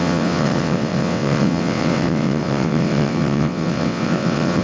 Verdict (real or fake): fake